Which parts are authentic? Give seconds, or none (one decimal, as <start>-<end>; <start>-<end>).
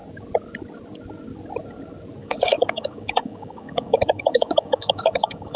0.0-2.2